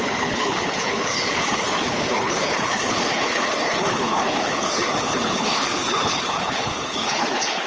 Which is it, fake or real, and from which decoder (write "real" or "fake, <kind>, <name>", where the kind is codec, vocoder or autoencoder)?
fake, codec, HILCodec